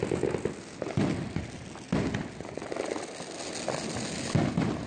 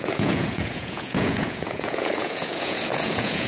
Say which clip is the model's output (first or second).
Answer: second